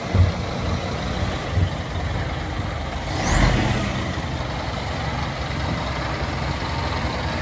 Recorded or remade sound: recorded